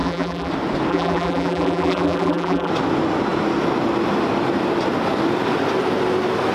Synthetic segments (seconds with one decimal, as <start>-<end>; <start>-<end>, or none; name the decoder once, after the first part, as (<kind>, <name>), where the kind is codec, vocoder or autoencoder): 0.0-0.5 (vocoder, BigVGAN v2); 0.9-2.7